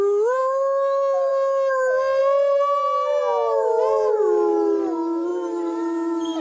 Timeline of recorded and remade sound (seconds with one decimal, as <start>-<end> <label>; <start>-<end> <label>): 0.0-6.4 recorded